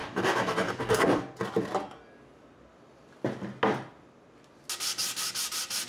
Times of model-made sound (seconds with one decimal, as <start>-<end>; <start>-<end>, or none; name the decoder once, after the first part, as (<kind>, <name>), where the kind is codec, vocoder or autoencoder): 0.0-1.2 (codec, DAC)